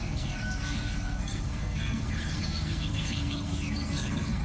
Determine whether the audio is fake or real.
fake